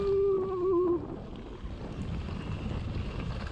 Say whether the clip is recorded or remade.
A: recorded